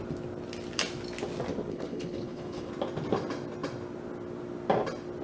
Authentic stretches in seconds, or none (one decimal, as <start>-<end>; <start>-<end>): 0.0-1.7; 2.7-5.2